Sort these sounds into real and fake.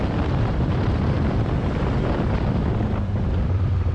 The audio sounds fake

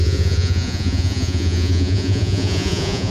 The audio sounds fake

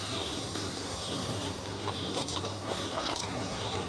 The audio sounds fake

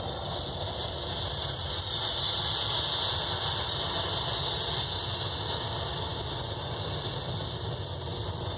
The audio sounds real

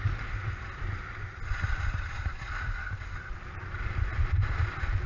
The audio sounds real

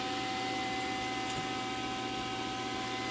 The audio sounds real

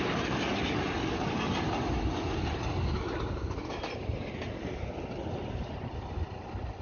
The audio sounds real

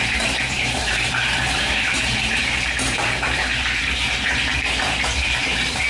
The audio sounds fake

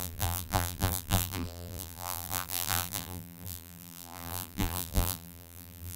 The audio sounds fake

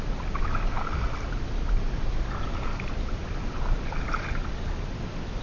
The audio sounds real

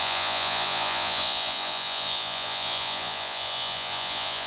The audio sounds fake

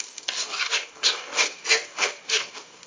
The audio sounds fake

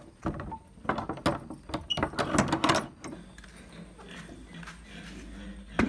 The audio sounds real